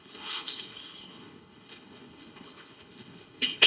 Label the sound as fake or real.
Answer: fake